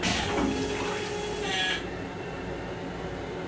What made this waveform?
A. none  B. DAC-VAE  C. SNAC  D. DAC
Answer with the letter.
A